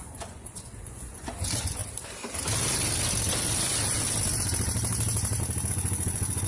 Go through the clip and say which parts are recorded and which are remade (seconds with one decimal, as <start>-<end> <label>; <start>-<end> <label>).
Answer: 0.0-1.8 remade; 1.8-5.7 recorded; 5.7-6.5 remade